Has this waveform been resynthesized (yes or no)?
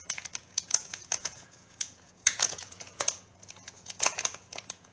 yes